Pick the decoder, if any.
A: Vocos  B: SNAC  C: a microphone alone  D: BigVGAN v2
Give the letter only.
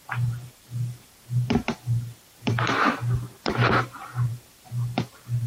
D